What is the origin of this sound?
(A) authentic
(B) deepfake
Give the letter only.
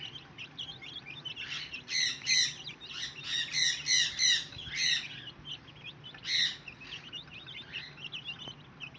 A